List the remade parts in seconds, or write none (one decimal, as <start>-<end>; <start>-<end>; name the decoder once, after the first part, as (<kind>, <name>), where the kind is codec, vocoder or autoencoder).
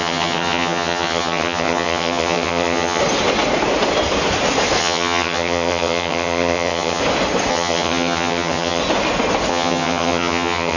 0.0-3.0 (vocoder, HiFi-GAN); 4.8-7.0; 7.5-8.8; 9.5-10.8